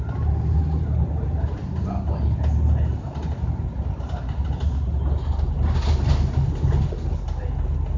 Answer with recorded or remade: recorded